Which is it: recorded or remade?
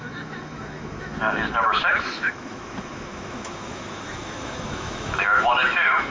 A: remade